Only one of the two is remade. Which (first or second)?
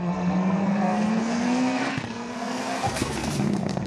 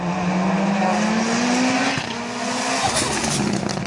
first